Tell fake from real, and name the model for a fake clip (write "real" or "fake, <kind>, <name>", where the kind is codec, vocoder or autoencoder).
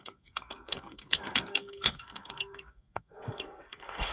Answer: fake, codec, SNAC